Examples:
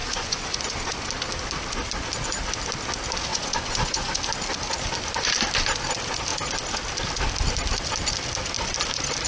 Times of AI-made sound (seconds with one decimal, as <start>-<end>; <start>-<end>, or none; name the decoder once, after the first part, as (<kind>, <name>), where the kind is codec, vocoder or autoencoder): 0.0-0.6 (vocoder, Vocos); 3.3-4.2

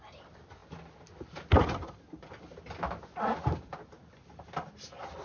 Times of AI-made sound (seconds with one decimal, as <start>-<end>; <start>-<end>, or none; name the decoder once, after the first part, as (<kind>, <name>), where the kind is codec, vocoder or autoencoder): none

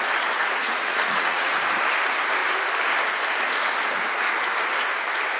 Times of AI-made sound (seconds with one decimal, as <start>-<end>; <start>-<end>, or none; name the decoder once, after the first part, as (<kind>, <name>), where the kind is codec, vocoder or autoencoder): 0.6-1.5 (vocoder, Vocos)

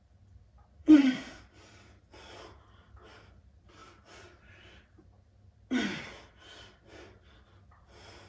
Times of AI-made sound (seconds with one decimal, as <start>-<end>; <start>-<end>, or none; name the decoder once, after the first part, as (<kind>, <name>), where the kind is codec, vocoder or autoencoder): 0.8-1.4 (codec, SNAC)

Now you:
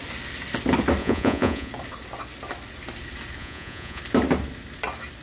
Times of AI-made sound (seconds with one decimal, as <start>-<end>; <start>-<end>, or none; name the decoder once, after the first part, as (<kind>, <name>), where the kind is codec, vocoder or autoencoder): 1.0-1.7 (vocoder, Vocos); 3.4-4.0

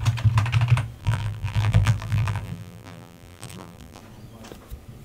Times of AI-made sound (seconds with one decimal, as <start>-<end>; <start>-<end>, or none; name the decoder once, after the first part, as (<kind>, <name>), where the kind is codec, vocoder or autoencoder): 1.0-4.0 (vocoder, BigVGAN v2)

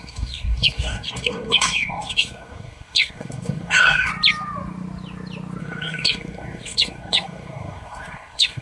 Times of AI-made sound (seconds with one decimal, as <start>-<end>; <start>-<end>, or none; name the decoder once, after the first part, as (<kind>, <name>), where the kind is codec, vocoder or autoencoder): 0.0-4.1 (codec, SNAC); 5.6-8.6

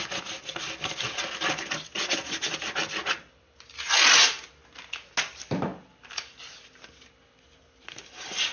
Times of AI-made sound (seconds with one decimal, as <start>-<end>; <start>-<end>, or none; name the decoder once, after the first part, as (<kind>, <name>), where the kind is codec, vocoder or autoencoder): none